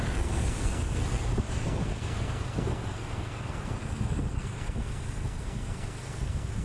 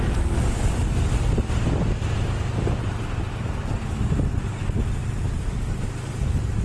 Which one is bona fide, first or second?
second